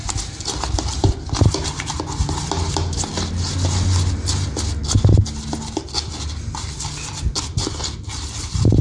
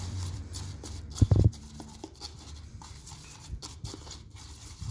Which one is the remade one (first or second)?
second